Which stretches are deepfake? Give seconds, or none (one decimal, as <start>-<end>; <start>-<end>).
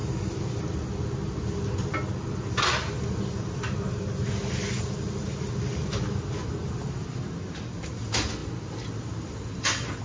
none